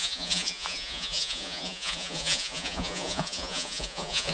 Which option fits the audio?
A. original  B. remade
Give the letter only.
B